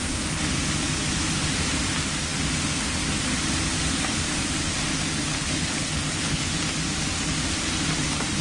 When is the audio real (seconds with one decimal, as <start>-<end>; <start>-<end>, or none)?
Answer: 0.0-5.3; 6.5-8.4